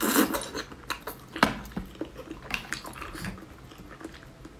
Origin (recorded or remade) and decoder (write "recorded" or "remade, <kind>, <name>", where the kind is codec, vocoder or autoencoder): recorded